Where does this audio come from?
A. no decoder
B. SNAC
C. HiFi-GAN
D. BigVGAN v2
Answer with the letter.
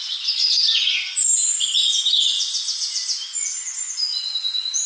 A